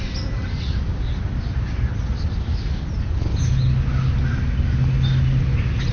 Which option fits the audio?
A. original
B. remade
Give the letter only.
A